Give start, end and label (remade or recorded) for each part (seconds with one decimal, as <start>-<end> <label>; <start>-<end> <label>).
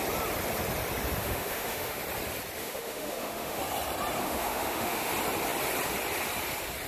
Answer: 0.0-1.2 recorded; 1.2-2.0 remade; 2.0-2.6 recorded; 2.6-3.6 remade; 3.6-4.2 recorded; 4.2-5.1 remade; 5.1-6.9 recorded